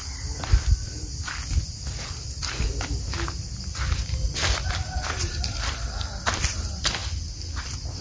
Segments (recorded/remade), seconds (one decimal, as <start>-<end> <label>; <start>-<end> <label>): 0.0-7.0 remade; 7.0-7.6 recorded; 7.6-8.0 remade